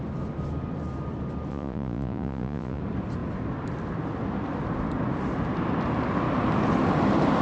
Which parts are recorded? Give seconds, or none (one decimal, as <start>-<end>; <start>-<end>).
0.0-1.5; 2.8-7.4